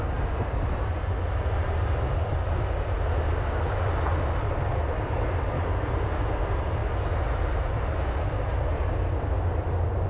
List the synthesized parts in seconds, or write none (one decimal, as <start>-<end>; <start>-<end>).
none